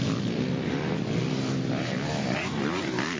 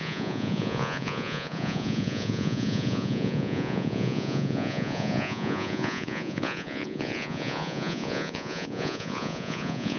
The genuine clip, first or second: first